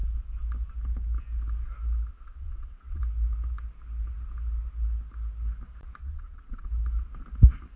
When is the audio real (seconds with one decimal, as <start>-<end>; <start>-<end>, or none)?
0.0-2.1; 3.0-6.0; 6.7-7.8